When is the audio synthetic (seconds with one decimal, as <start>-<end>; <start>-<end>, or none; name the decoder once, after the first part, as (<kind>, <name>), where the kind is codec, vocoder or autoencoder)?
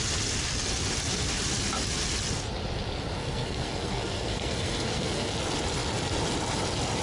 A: 3.2-5.3 (codec, SNAC)